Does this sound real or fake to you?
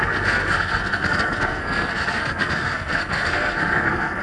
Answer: fake